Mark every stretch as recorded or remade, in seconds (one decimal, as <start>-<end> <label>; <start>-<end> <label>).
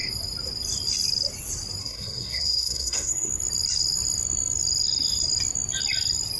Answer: 0.0-1.8 recorded; 1.8-3.3 remade; 3.3-6.4 recorded